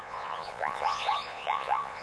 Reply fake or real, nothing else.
fake